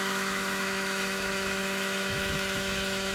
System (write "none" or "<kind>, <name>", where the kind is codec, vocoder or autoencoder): autoencoder, DAC-VAE